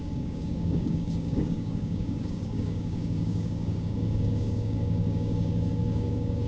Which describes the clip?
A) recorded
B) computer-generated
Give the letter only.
B